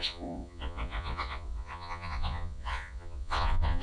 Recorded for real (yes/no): no